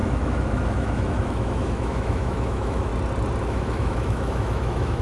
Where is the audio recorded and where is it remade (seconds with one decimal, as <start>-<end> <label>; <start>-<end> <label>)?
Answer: 0.0-2.9 remade; 2.9-3.4 recorded; 3.4-5.0 remade